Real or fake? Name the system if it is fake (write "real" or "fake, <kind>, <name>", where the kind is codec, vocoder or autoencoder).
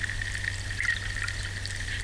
real